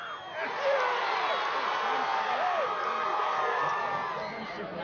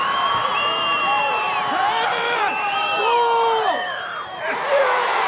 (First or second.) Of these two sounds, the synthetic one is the second